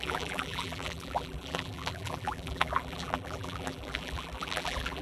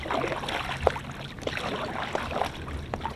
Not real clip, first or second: first